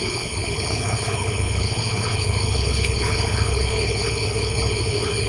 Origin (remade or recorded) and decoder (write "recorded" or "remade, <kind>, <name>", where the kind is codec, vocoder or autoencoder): remade, codec, HILCodec